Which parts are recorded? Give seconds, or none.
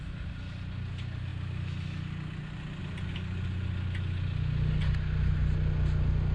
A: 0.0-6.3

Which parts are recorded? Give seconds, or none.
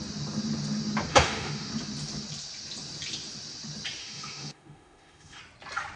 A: 0.0-1.1; 1.7-4.0; 5.4-6.0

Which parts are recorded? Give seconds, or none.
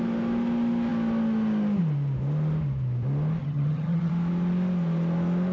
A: 0.0-3.4; 4.1-5.5